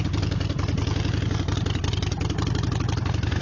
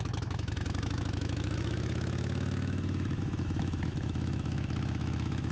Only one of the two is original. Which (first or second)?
first